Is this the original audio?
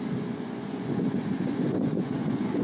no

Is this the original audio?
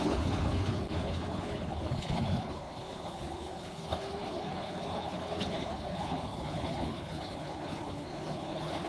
no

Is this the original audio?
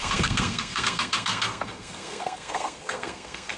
no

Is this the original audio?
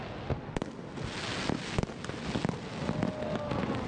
yes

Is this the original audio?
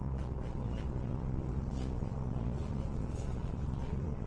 no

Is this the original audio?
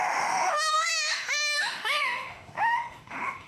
no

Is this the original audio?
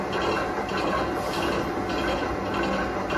yes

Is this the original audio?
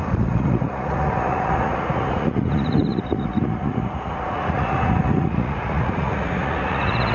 no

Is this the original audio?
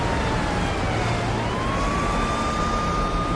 yes